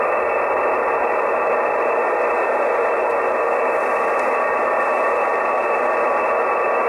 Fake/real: real